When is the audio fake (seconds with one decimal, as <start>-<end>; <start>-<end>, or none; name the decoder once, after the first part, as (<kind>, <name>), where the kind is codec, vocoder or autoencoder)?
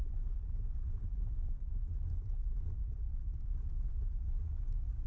none